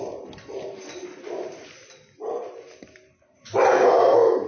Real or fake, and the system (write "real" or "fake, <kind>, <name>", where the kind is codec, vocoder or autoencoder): fake, vocoder, BigVGAN v2